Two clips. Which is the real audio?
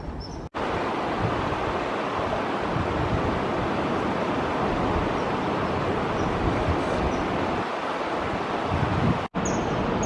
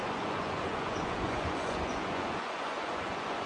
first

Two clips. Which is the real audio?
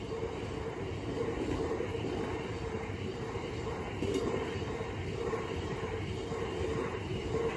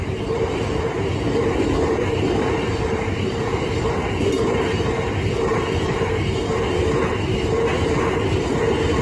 second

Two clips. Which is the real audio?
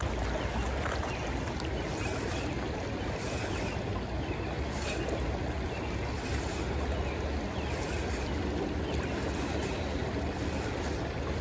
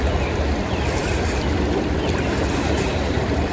first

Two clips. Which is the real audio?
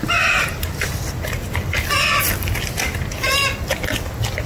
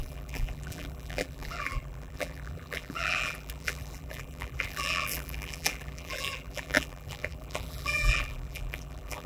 first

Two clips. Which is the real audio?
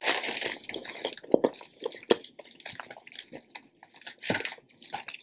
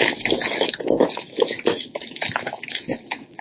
first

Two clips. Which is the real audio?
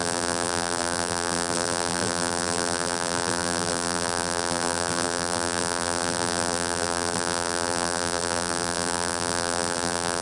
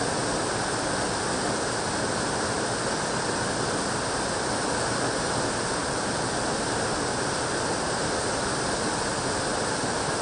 second